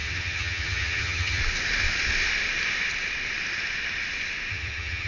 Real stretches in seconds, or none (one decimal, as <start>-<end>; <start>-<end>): 1.4-4.5